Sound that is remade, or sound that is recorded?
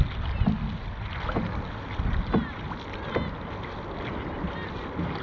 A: recorded